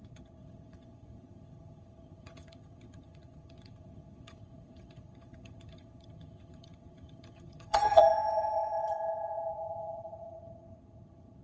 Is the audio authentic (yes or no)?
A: no